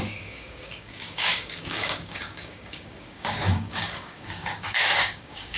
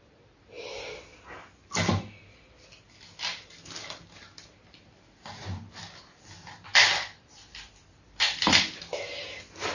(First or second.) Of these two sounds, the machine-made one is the first